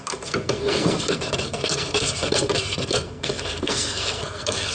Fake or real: fake